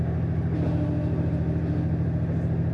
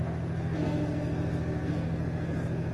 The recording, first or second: first